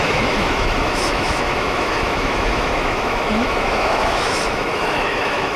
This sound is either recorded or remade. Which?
remade